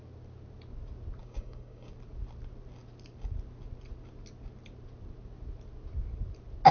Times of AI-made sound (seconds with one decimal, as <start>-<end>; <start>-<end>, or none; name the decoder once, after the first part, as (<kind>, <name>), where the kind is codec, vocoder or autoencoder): 1.2-1.9 (codec, DAC)